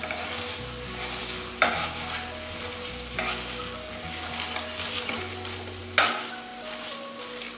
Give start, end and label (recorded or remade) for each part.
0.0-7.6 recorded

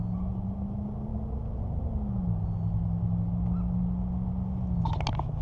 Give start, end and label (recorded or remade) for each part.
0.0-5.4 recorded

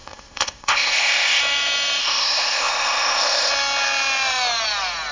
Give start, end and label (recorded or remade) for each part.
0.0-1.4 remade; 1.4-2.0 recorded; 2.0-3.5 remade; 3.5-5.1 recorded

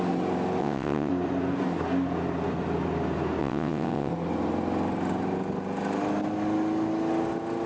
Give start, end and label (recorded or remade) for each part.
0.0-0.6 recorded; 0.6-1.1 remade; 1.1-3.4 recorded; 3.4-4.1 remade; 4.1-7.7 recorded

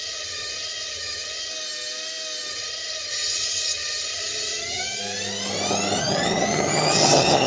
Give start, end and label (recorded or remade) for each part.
0.0-1.5 remade; 1.5-2.5 recorded; 2.5-5.0 remade; 5.0-6.0 recorded; 6.0-7.5 remade

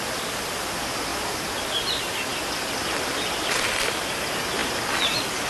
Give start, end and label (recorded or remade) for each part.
0.0-2.3 recorded; 2.3-4.0 remade; 4.0-5.5 recorded

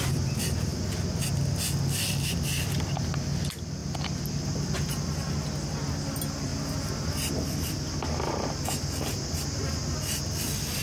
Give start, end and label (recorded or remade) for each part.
0.0-10.8 recorded